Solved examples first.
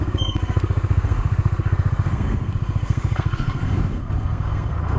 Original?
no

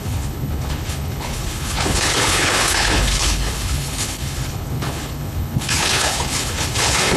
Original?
no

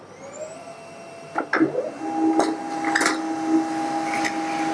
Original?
yes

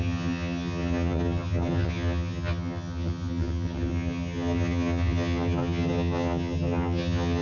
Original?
no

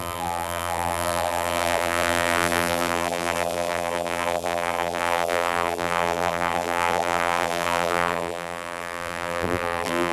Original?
no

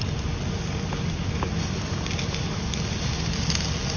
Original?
yes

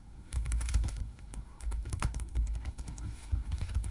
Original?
no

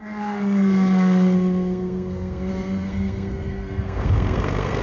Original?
no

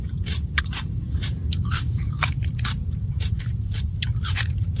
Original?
no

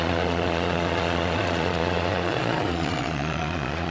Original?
no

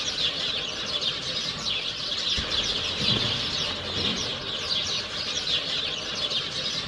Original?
yes